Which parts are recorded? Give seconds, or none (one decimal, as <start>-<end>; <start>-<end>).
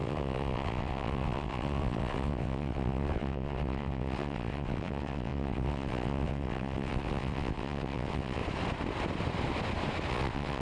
8.4-10.1